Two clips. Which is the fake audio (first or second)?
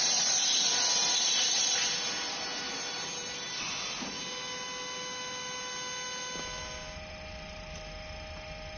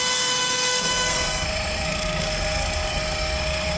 second